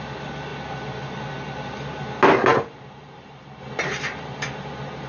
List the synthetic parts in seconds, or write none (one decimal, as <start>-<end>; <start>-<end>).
none